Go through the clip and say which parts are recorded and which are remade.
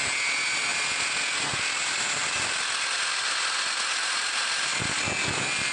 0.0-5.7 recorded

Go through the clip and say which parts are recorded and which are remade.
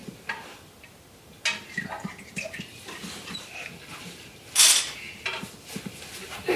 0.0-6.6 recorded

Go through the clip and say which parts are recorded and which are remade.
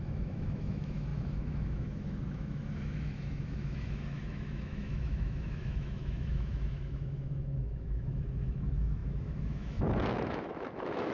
0.0-11.1 remade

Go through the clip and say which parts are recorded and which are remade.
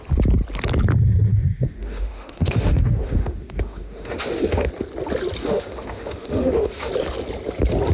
0.0-1.3 recorded; 1.3-4.7 remade; 4.7-5.4 recorded; 5.4-6.9 remade; 6.9-7.9 recorded